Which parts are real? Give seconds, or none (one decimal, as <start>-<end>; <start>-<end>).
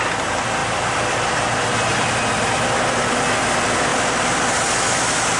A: 0.0-5.4